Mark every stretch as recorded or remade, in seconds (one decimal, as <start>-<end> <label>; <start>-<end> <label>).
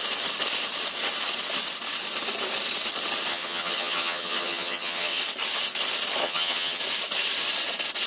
0.0-3.3 recorded; 3.3-5.2 remade; 5.2-6.2 recorded; 6.2-6.8 remade; 6.8-8.1 recorded